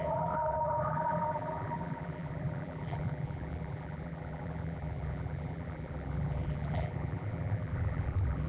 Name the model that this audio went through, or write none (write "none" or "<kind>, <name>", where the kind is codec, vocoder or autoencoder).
vocoder, BigVGAN v2